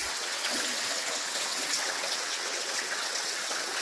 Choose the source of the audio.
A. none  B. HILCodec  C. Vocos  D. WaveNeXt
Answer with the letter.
D